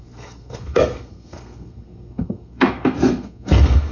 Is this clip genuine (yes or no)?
no